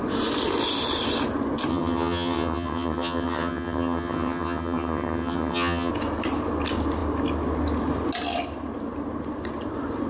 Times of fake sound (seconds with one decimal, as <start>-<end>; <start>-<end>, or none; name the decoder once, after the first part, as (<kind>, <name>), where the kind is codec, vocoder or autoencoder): 1.7-5.9 (vocoder, HiFi-GAN)